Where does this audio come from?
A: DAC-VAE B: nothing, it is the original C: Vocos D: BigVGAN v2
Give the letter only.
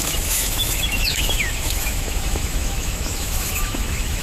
A